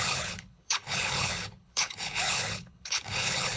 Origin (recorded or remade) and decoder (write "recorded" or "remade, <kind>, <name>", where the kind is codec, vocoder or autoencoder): remade, codec, HILCodec